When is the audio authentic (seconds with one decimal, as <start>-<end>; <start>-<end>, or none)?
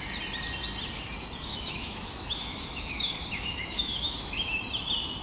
0.0-1.5; 4.6-5.2